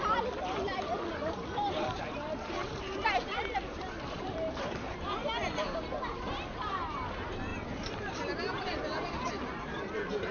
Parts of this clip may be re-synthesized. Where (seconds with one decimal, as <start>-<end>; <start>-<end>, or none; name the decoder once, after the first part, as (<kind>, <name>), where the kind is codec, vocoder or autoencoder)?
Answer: 0.0-5.2 (vocoder, BigVGAN v2); 5.8-10.3